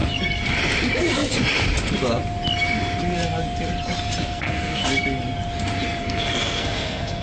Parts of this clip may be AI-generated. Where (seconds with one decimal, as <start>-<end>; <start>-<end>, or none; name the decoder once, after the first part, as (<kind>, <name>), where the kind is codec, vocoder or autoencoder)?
4.3-4.8 (codec, SNAC); 6.0-7.2